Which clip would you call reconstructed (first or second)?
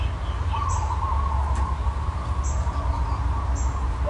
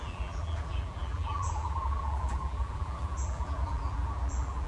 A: second